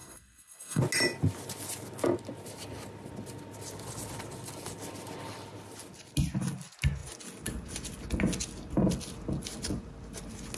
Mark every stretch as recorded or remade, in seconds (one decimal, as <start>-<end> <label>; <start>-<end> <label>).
0.0-0.8 remade; 0.8-10.6 recorded